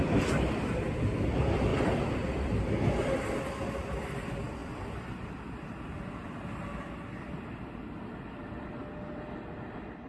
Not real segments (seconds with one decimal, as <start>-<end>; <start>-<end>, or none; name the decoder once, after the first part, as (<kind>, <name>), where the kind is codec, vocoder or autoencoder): none